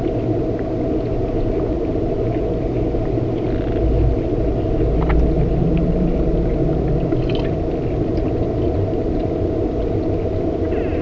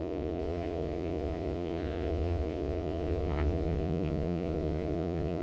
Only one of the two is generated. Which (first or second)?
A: second